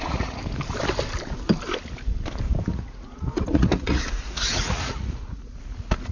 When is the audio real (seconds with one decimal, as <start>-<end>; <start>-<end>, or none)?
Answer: 0.4-2.7